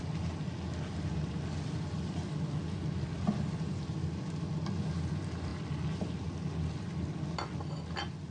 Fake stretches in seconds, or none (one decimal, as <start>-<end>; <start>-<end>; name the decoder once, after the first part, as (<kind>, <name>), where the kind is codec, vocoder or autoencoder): none